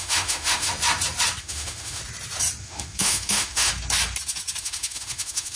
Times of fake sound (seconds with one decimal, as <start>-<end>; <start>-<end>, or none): 0.0-0.7; 1.4-2.0; 2.6-3.7; 4.6-5.6